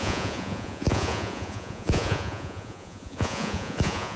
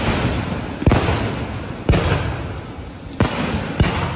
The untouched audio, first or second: second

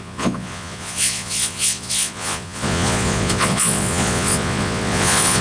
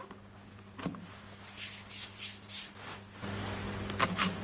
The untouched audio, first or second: second